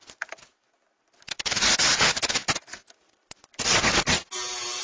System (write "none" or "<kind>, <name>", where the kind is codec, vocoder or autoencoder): none